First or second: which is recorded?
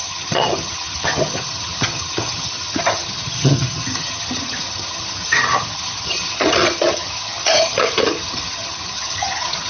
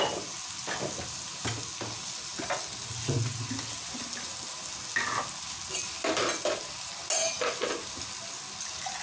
second